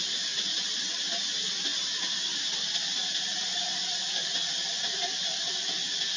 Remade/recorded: recorded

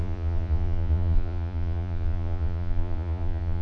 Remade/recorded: remade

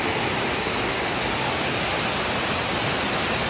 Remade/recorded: recorded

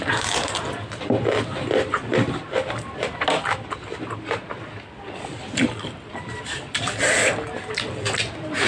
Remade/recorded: recorded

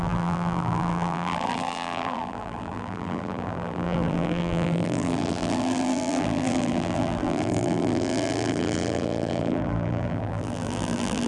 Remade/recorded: remade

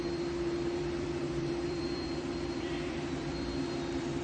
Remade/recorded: remade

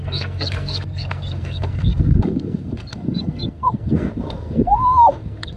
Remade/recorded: remade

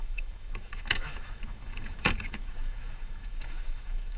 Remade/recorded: remade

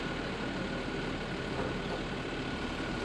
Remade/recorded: recorded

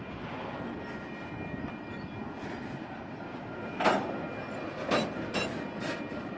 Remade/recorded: recorded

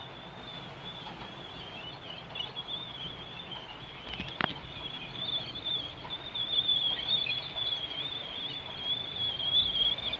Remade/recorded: recorded